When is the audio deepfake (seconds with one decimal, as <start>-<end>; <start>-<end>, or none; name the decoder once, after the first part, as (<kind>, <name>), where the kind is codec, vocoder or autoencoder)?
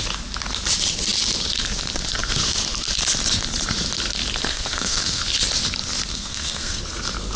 4.5-5.2 (codec, SNAC); 6.1-6.8